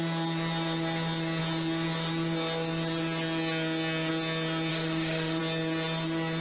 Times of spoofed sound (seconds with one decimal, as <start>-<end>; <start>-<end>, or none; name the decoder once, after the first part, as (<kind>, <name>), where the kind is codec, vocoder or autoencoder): 4.7-5.4 (autoencoder, DAC-VAE)